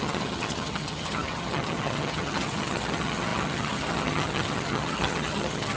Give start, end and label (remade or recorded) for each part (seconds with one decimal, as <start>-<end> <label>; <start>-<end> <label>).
0.0-5.8 remade